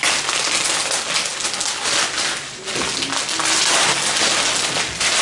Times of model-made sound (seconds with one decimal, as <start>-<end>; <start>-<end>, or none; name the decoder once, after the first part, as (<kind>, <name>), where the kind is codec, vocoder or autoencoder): none

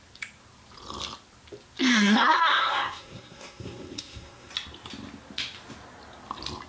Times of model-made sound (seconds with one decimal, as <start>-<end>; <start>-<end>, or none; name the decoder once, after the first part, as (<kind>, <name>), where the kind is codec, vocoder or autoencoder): 1.9-4.5 (codec, SNAC)

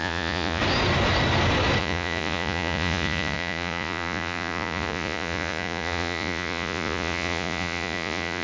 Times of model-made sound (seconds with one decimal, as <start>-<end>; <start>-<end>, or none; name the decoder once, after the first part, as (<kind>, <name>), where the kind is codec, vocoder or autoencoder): 0.0-0.6 (vocoder, Vocos); 1.8-8.4

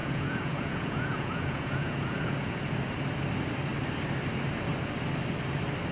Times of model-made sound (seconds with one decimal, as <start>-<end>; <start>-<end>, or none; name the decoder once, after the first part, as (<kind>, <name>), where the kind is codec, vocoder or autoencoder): 0.0-2.6 (vocoder, Vocos)

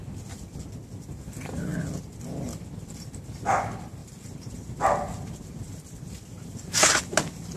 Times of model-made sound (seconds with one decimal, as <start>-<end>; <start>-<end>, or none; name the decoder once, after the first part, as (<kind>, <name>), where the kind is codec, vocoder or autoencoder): 4.0-6.7 (vocoder, BigVGAN v2)

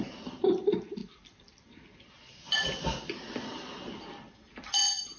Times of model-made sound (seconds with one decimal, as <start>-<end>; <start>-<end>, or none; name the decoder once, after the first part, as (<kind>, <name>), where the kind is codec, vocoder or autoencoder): none

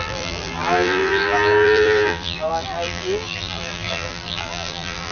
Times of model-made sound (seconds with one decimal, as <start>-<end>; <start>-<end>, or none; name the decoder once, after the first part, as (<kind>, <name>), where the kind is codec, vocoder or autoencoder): 0.0-5.1 (vocoder, BigVGAN v2)

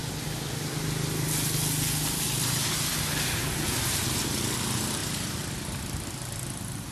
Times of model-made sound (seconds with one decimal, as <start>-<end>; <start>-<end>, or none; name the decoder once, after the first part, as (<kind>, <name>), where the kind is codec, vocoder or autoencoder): none